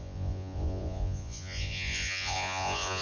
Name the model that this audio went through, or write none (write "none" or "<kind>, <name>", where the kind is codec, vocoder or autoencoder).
vocoder, Vocos